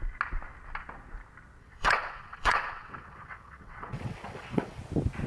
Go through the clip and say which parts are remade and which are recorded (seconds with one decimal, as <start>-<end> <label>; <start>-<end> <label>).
0.0-1.6 recorded; 1.6-4.8 remade; 4.8-5.3 recorded